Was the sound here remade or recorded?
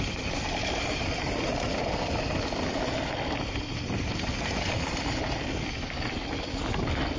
recorded